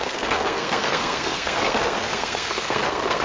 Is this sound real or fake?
fake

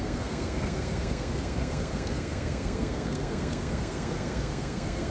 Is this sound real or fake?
fake